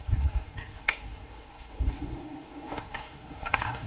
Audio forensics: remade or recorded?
remade